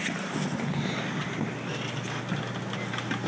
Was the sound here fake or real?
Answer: real